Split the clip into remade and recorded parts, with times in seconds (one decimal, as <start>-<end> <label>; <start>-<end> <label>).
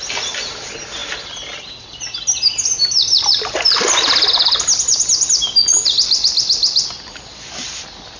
0.0-8.2 recorded